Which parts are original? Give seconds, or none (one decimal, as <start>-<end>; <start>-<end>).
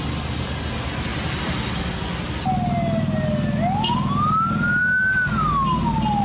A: 0.0-6.2